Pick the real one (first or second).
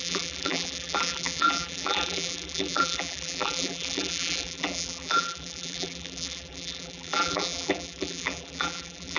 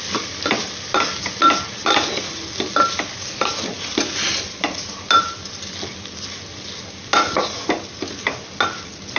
second